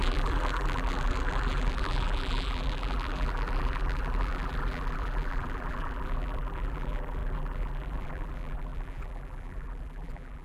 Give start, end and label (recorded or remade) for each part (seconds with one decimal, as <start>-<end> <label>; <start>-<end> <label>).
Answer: 0.0-10.4 remade